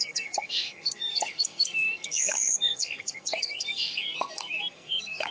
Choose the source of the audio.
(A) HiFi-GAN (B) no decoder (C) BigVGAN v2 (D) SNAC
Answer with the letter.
D